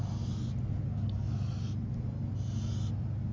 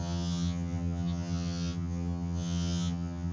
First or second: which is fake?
second